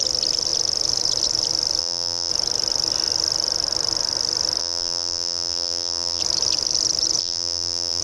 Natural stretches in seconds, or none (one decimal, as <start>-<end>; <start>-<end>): 0.0-1.8; 2.3-4.6; 6.2-7.2